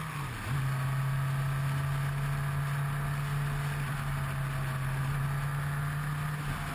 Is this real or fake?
real